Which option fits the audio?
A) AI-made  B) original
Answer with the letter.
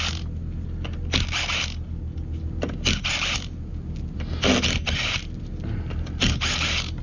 B